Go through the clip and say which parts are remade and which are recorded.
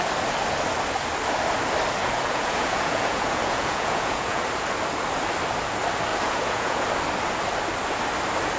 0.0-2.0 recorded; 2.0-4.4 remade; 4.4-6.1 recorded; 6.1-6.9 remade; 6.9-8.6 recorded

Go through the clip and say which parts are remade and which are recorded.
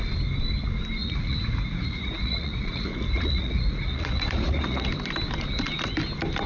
0.0-1.0 recorded; 1.0-4.9 remade; 4.9-6.5 recorded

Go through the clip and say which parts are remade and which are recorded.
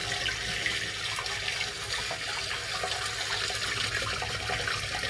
0.0-5.1 recorded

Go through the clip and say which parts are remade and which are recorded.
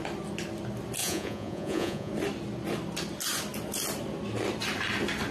0.0-1.0 recorded; 1.0-2.1 remade; 2.1-5.3 recorded